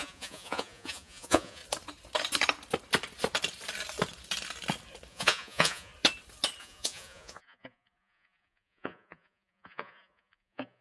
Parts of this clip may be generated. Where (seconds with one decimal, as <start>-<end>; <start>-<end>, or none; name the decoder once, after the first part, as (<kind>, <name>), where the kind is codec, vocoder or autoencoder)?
0.0-1.6 (vocoder, Vocos); 5.1-5.9; 6.6-10.8